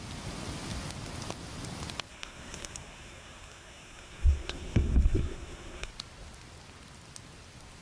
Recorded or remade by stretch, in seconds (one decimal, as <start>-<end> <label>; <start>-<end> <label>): 0.0-2.1 recorded; 2.1-5.9 remade; 5.9-7.8 recorded